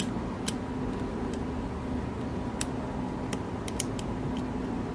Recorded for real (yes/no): yes